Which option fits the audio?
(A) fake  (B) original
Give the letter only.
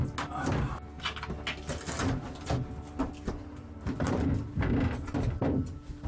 B